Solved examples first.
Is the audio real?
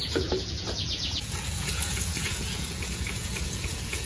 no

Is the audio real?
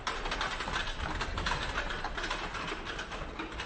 yes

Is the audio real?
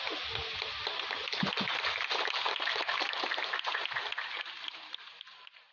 yes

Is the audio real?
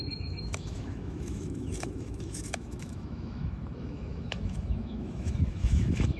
no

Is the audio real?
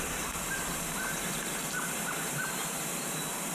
no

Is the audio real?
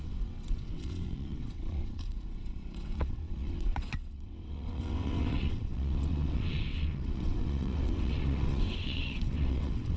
no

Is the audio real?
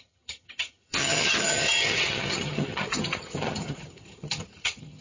no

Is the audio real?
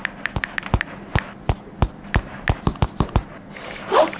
yes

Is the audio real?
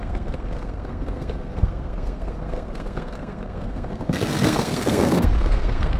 no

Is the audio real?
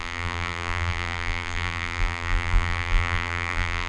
no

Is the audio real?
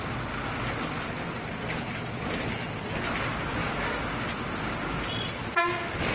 yes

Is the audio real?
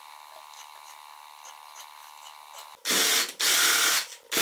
yes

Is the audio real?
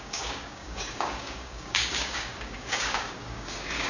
no